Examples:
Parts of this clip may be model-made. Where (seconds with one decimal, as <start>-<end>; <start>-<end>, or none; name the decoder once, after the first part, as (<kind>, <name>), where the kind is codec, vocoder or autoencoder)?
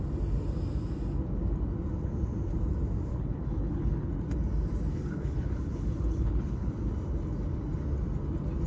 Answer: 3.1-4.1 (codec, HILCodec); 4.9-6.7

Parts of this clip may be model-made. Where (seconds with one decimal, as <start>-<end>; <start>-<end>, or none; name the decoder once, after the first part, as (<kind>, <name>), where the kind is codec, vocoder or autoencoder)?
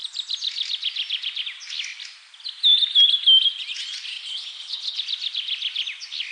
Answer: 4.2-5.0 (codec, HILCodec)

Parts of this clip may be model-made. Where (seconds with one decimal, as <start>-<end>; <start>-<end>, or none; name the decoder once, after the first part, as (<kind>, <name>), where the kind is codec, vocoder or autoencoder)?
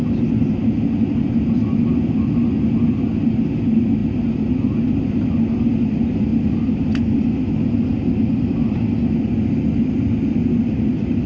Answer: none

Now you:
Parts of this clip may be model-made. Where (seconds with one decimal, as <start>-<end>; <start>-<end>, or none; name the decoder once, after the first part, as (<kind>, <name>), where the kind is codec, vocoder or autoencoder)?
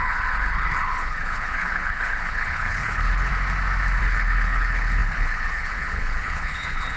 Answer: 0.0-3.3 (codec, HILCodec); 4.0-7.0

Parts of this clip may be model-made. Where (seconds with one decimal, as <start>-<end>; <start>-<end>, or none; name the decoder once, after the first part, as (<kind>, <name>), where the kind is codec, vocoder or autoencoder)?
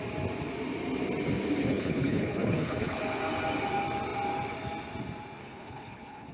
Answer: 1.7-3.0 (codec, HILCodec); 5.4-6.3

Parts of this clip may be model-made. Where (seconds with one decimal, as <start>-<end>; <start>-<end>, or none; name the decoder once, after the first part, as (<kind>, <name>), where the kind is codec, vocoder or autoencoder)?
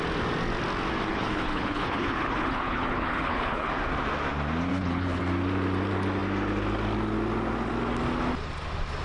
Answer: 1.1-3.7 (codec, HILCodec); 4.7-5.2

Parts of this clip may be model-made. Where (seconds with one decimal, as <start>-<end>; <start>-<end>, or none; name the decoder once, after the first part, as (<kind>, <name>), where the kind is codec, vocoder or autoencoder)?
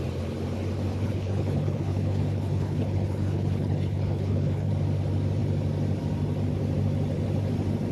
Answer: 0.9-4.7 (codec, HILCodec)